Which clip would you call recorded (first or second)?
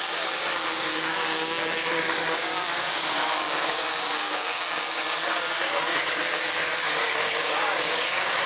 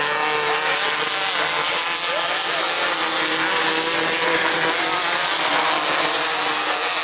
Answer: second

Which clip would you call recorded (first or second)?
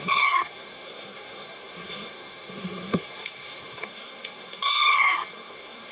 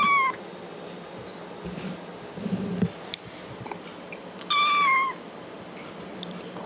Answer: second